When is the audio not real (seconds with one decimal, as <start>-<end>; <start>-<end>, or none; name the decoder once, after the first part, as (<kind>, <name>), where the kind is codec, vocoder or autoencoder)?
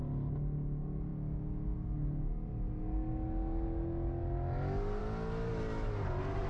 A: none